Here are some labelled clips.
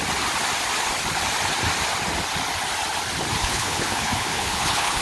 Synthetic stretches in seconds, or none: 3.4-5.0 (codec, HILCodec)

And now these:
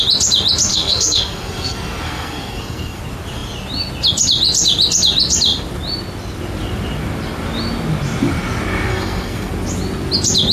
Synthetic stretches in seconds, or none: 0.7-3.0 (codec, SNAC); 8.9-9.5